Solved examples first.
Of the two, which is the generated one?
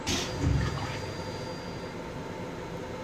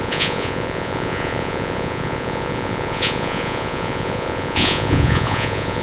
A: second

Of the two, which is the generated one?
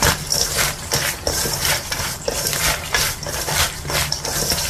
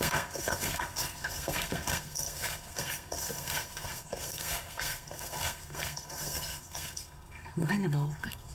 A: second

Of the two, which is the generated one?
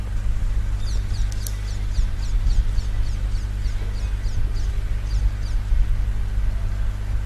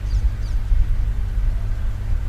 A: second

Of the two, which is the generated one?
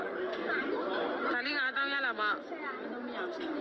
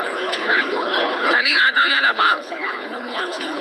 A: second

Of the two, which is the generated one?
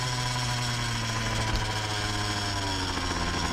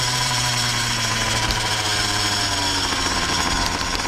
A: second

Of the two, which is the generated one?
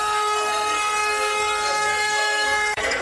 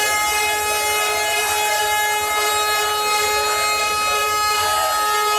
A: first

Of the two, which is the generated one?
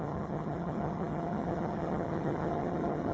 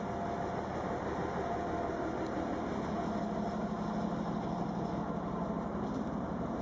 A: first